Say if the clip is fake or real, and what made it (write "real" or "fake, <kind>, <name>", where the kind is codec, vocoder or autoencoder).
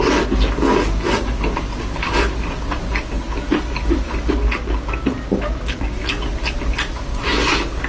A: real